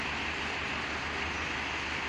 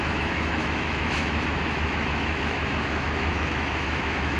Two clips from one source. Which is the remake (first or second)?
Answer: second